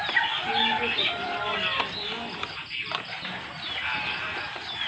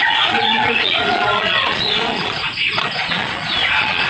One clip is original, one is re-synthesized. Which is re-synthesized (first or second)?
second